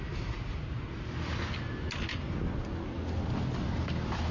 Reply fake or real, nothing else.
real